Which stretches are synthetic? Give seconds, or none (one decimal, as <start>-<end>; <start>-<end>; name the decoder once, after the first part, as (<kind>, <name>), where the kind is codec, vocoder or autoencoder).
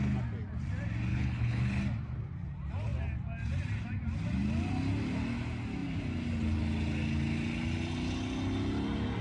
1.1-1.8 (codec, HILCodec)